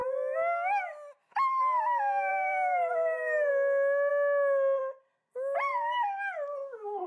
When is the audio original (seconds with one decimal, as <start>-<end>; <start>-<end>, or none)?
0.0-2.3; 3.5-7.1